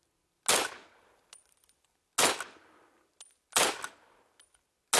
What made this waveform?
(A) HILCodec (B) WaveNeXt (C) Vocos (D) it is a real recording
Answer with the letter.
D